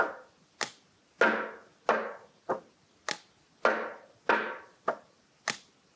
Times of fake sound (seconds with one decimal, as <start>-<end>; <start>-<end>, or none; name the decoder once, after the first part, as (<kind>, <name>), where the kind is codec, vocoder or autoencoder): none